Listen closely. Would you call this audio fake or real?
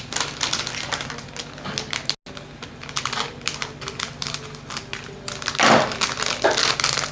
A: real